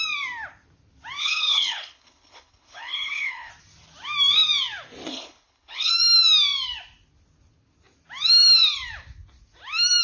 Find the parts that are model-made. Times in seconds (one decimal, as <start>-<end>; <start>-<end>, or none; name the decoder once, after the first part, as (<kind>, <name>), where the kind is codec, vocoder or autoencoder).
1.2-3.5 (codec, HILCodec); 5.1-5.9